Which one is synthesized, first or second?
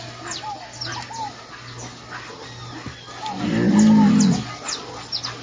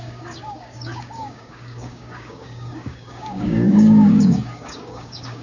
second